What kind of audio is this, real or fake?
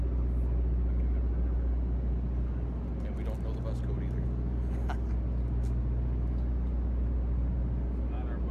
real